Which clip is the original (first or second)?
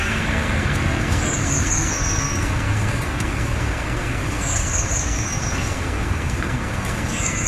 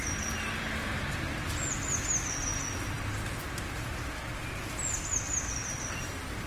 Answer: second